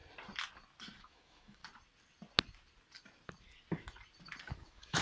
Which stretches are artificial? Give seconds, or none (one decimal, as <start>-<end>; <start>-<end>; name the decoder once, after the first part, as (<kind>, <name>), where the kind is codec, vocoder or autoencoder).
1.0-1.6 (autoencoder, DAC-VAE); 4.5-5.0